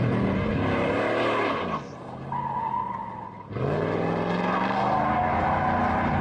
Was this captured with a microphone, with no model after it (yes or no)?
yes